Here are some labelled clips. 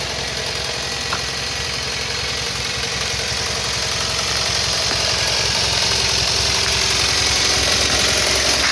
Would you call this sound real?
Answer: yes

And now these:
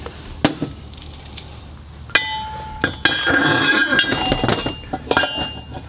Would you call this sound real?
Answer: yes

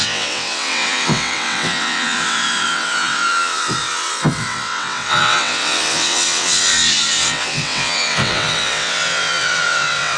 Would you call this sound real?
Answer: no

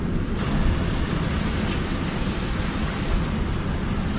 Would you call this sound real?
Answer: yes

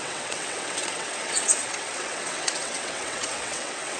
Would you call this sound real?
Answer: no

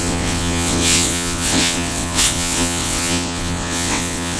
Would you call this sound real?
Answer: no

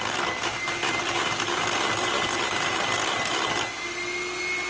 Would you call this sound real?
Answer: yes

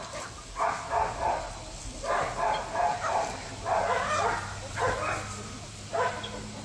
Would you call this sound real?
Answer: yes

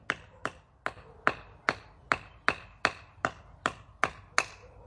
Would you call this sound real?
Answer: yes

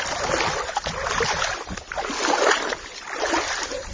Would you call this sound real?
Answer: yes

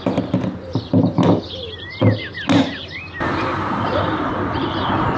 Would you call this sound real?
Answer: yes